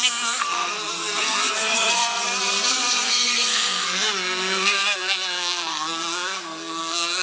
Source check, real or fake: fake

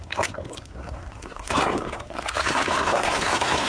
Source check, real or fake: fake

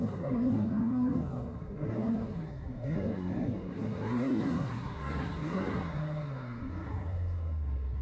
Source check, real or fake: fake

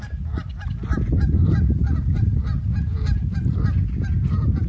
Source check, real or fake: real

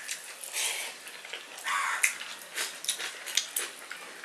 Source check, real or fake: real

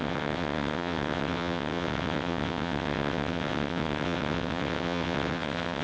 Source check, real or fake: fake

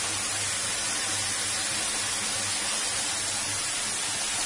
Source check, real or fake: real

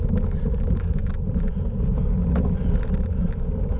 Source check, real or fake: real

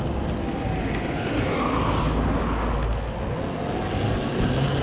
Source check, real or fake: real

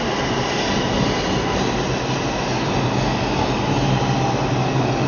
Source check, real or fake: real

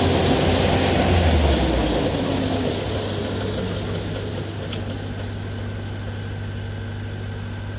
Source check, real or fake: real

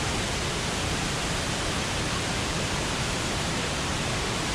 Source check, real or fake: fake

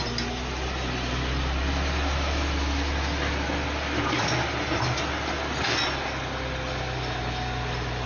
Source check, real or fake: real